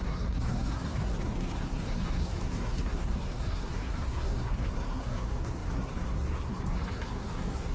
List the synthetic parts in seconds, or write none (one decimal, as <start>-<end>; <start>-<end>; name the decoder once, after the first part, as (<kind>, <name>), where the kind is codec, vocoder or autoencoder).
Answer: 0.0-7.7 (codec, SNAC)